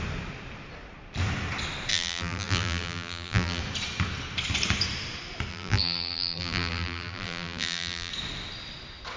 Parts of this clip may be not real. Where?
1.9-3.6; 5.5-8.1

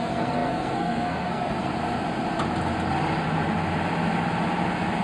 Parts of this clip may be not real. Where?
0.0-1.7

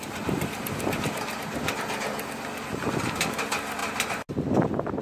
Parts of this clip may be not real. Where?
none

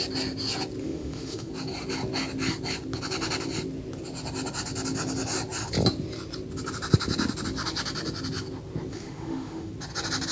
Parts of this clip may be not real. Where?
0.8-1.5; 8.9-9.7

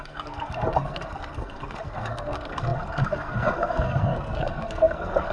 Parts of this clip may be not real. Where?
0.0-5.3

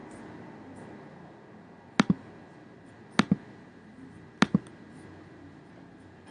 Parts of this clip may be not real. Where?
none

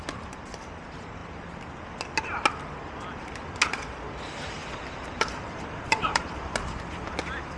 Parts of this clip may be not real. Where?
4.6-6.4